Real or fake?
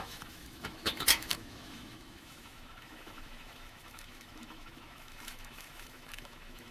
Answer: fake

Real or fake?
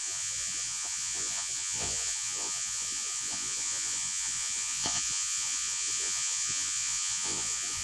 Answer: fake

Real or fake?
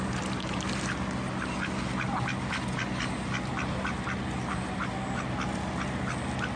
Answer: real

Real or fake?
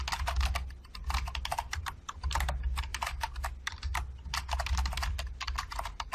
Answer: real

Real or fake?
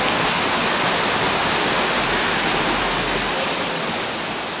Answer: real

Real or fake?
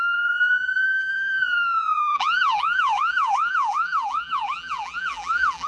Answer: fake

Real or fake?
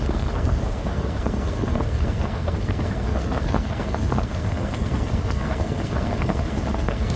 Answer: fake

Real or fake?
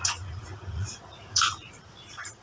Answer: fake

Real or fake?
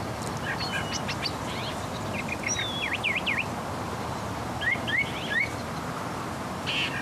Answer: real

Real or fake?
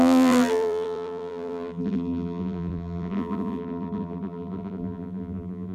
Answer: fake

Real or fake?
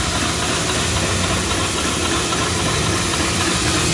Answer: real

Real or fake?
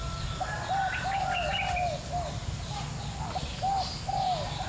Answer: real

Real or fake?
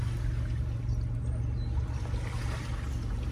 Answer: real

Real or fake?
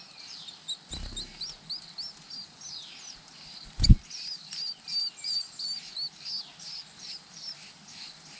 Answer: real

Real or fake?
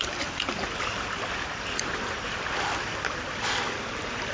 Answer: fake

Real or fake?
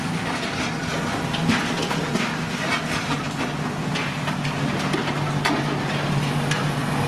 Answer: real